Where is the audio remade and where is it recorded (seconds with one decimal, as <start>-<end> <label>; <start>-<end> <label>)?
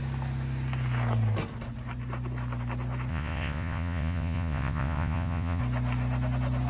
0.0-3.1 recorded; 3.1-5.6 remade; 5.6-6.7 recorded